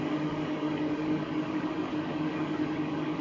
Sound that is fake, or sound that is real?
fake